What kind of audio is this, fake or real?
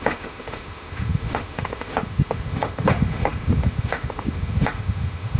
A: fake